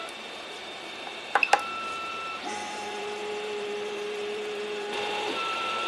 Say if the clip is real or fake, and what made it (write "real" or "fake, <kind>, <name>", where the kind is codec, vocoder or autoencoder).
fake, vocoder, BigVGAN v2